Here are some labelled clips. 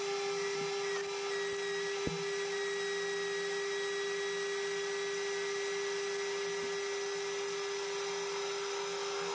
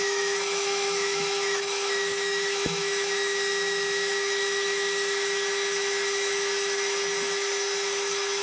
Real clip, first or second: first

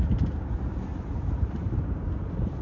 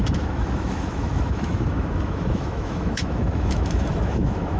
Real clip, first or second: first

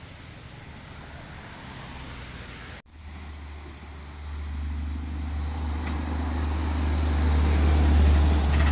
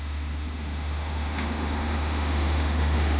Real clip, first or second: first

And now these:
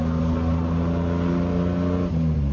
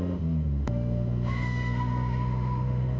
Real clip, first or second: first